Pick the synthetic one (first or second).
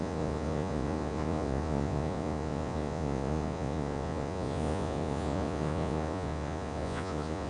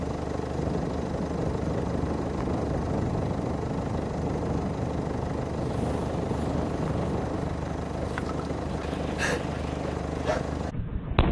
first